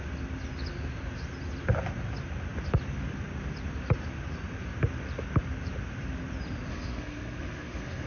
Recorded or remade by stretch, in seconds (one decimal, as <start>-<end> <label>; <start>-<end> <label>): 0.0-6.7 recorded; 6.7-8.1 remade